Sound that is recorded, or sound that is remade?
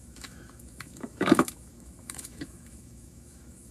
remade